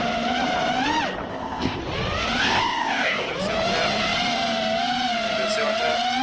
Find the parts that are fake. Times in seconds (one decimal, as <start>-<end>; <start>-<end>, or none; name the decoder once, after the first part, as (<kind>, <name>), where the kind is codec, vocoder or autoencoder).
1.3-1.8 (codec, ZipCodec); 2.4-3.3